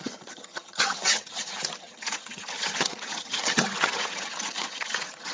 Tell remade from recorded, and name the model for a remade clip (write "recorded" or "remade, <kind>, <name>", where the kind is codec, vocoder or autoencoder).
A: remade, vocoder, HiFi-GAN